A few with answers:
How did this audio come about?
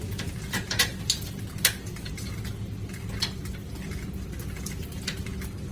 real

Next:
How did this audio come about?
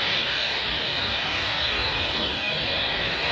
fake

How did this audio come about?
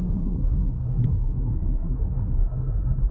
fake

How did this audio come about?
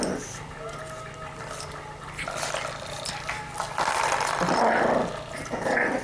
real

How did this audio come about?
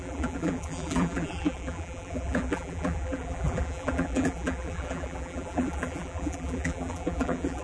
fake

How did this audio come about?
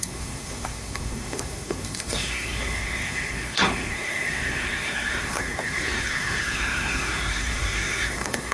fake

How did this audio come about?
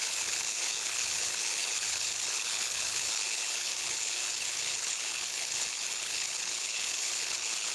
fake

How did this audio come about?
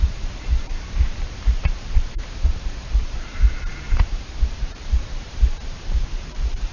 fake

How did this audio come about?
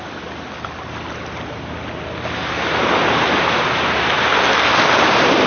real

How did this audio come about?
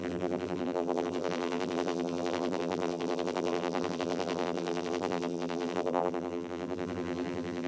fake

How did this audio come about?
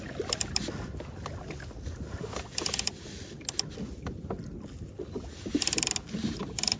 real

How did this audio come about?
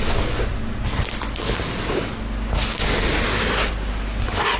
real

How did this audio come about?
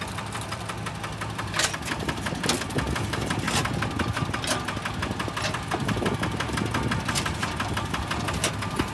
fake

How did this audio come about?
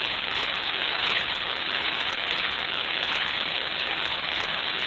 fake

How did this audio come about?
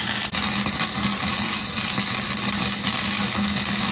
real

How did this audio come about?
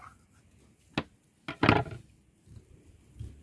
real